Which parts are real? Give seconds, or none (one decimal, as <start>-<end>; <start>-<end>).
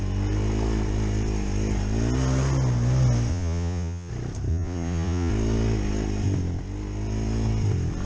0.0-3.3; 4.1-4.5; 5.3-8.1